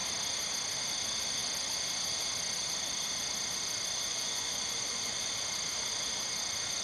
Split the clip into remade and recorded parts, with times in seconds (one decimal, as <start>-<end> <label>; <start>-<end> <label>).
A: 0.0-4.1 recorded; 4.1-5.3 remade; 5.3-6.8 recorded